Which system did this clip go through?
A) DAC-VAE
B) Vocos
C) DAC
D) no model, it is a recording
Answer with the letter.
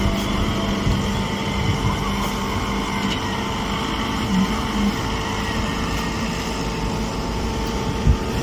D